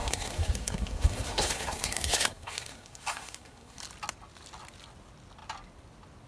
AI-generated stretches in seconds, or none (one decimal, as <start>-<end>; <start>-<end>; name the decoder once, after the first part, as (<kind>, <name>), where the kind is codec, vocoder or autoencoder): 0.0-3.8 (codec, SNAC)

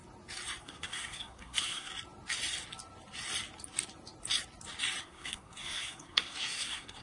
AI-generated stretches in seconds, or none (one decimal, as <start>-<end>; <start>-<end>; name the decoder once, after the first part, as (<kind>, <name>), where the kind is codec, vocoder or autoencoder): 0.6-1.9 (codec, SNAC); 5.0-7.0

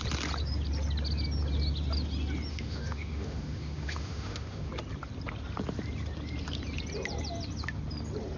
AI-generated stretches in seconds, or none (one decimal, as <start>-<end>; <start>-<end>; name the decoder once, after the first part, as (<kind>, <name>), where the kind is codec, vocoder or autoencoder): 2.5-4.7 (autoencoder, DAC-VAE)